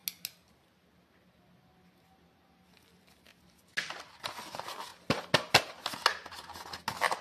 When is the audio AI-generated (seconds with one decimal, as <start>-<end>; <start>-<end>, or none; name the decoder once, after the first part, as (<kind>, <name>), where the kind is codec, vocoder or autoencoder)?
none